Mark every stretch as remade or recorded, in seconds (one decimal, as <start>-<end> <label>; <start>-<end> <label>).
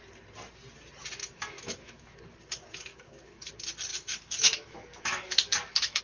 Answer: 0.0-1.2 recorded; 1.2-2.2 remade; 2.2-2.9 recorded; 2.9-3.5 remade; 3.5-3.9 recorded; 3.9-6.0 remade